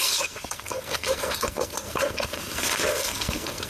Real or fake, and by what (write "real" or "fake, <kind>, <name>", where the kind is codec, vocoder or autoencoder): fake, codec, SNAC